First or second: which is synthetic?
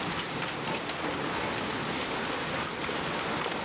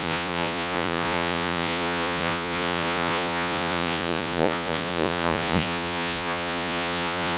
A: second